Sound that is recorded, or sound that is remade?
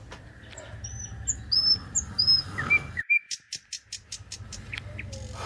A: recorded